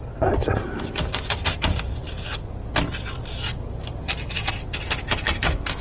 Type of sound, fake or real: real